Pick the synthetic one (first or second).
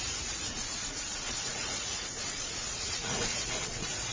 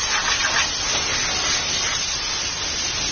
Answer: first